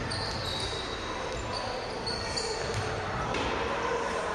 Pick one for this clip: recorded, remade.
recorded